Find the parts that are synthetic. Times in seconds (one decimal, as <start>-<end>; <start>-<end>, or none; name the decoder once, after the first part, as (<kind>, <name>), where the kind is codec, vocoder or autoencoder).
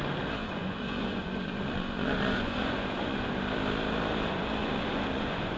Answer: 0.4-3.3 (vocoder, Vocos); 4.6-5.6